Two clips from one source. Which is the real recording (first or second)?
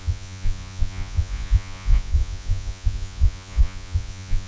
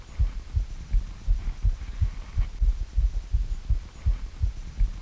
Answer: second